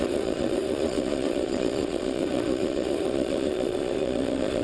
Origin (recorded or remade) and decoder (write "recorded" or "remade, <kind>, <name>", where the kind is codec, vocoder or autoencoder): remade, vocoder, Vocos